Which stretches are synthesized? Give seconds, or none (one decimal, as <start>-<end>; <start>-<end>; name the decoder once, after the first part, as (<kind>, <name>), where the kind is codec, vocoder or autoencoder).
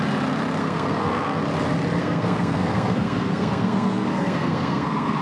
0.6-1.4 (codec, SNAC); 2.0-5.2